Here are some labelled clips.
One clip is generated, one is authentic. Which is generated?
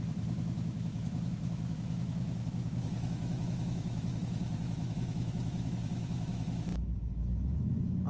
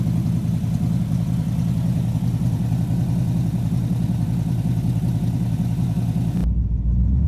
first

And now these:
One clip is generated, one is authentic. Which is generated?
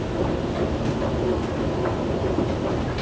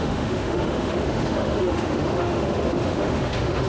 second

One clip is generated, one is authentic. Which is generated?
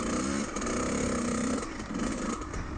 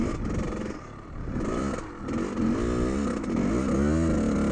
first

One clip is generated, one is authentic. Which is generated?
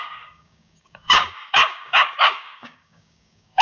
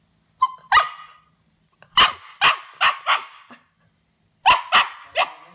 first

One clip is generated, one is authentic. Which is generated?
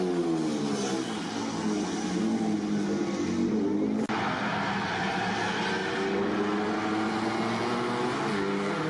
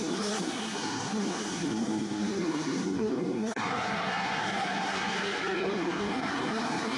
second